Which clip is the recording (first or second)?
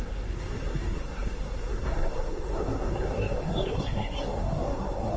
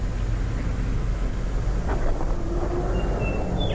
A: second